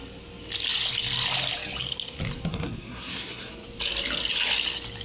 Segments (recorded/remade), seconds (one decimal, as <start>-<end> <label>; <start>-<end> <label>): 0.0-2.5 recorded; 2.5-3.5 remade; 3.5-5.0 recorded